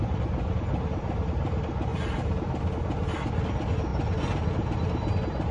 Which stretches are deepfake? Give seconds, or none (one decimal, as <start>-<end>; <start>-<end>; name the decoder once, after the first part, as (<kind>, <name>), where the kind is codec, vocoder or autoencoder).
none